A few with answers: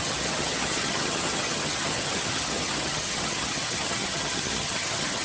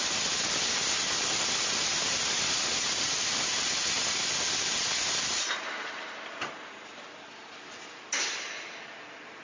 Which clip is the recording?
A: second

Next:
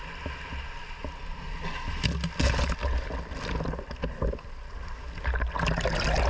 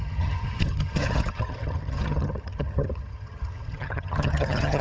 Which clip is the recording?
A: first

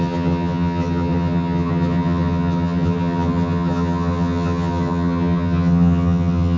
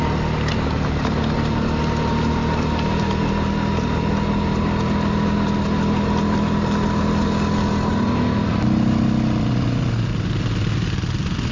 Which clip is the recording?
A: second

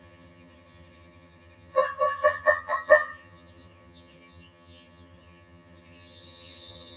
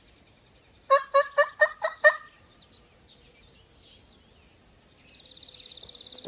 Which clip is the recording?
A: second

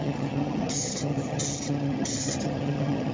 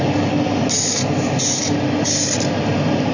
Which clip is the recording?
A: second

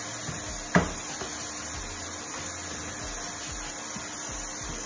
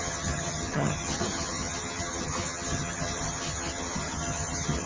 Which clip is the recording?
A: first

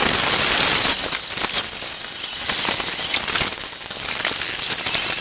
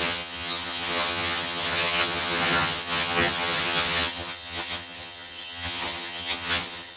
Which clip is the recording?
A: first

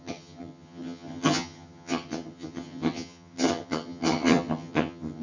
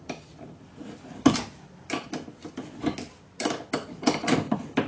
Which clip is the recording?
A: second